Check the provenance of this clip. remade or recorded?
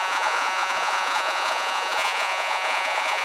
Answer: remade